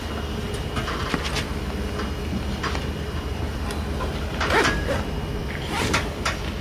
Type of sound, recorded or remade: recorded